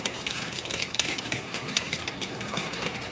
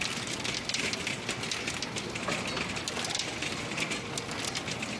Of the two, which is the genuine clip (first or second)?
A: second